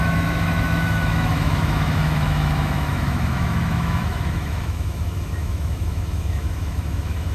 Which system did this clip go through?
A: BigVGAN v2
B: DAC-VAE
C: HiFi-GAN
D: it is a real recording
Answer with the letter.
B